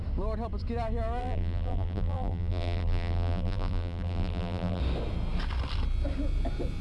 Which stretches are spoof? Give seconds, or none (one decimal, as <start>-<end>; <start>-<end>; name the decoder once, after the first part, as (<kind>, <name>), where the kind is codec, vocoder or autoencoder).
1.2-4.8 (vocoder, BigVGAN v2)